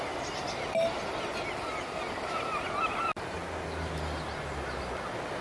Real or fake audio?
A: real